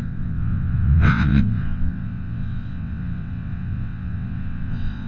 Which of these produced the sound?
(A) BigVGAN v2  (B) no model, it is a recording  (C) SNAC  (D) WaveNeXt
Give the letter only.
D